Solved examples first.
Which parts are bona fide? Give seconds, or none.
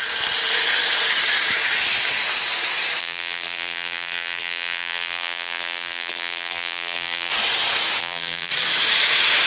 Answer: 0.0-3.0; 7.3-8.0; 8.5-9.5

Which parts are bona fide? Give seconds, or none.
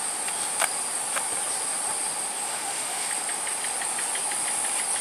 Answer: 0.0-2.5; 3.1-5.0